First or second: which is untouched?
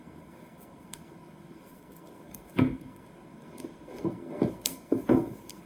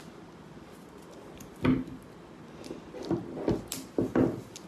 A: second